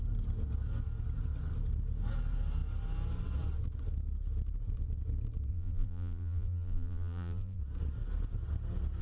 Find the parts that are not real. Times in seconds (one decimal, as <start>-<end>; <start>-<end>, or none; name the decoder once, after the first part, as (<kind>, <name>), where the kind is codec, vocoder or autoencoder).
5.5-7.6 (vocoder, BigVGAN v2)

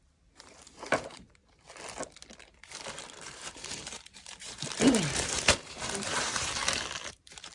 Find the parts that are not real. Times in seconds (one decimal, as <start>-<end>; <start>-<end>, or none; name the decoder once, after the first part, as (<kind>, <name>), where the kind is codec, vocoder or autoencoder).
0.0-1.4 (vocoder, BigVGAN v2); 2.9-6.6; 7.1-7.5

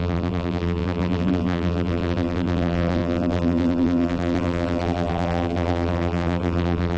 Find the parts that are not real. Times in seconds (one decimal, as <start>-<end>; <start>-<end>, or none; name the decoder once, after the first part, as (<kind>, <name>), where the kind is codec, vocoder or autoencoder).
0.0-7.0 (vocoder, BigVGAN v2)

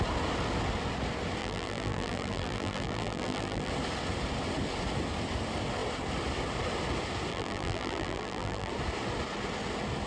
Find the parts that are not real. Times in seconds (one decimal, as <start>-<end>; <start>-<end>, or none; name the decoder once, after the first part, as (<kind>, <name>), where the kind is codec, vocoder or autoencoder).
1.4-3.7 (vocoder, BigVGAN v2); 7.3-8.7

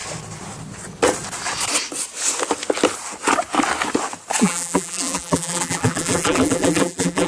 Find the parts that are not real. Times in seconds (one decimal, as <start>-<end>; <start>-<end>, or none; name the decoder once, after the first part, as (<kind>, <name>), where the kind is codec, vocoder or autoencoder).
4.4-7.3 (vocoder, BigVGAN v2)

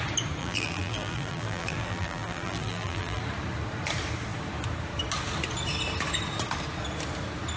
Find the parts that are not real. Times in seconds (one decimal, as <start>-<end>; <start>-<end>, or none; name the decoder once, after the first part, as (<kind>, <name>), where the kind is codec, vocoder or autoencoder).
0.4-3.2 (vocoder, BigVGAN v2)